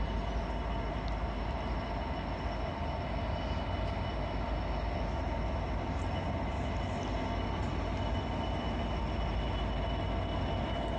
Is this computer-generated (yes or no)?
no